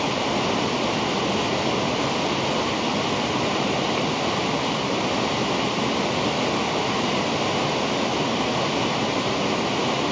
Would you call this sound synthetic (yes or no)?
no